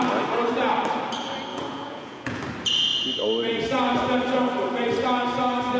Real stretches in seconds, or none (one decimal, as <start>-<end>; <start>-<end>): 0.0-1.5; 2.4-5.8